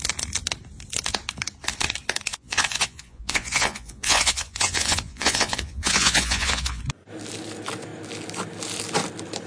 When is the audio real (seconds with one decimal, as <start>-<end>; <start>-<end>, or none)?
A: 0.0-2.3; 6.8-9.5